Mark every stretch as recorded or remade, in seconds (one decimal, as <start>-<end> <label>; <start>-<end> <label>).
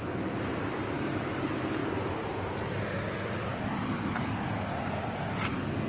0.0-1.8 recorded; 1.8-2.7 remade; 2.7-3.5 recorded; 3.5-4.3 remade; 4.3-5.9 recorded